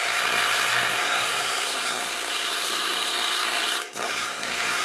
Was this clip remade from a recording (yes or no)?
yes